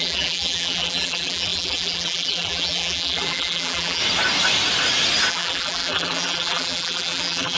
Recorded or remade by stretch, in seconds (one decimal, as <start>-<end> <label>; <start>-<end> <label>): 0.0-4.0 remade; 4.0-5.3 recorded; 5.3-7.6 remade